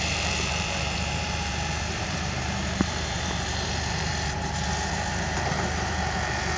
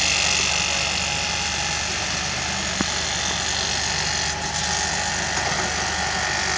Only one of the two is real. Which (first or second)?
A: second